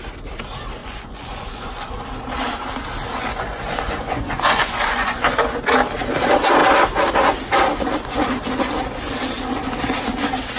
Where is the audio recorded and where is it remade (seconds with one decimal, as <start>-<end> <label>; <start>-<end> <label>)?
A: 0.0-0.8 recorded; 0.8-2.0 remade; 2.0-3.3 recorded; 3.3-5.5 remade; 5.5-10.6 recorded

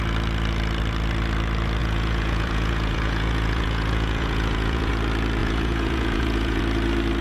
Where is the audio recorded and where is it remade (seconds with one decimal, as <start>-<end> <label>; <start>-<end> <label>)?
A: 0.0-1.8 recorded; 1.8-4.9 remade; 4.9-5.4 recorded; 5.4-6.6 remade; 6.6-7.2 recorded

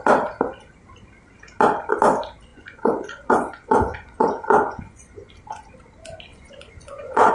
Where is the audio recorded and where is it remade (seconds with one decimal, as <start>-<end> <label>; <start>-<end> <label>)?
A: 0.0-2.5 recorded; 2.5-5.3 remade; 5.3-6.3 recorded; 6.3-7.3 remade

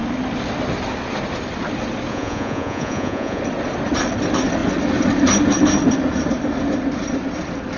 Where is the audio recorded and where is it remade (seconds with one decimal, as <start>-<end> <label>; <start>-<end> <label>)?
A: 0.0-2.1 recorded; 2.1-3.4 remade; 3.4-7.8 recorded

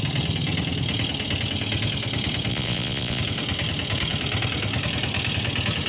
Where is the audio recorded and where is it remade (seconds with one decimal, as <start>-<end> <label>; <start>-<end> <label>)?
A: 0.0-2.5 recorded; 2.5-3.2 remade; 3.2-5.9 recorded